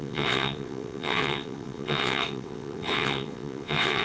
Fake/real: fake